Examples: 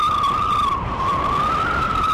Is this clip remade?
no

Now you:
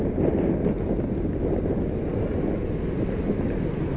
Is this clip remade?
no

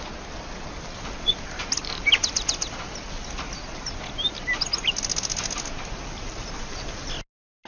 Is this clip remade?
no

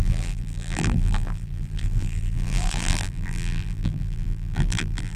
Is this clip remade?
yes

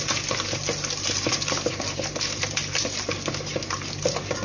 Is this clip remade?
no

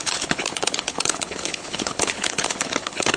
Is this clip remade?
yes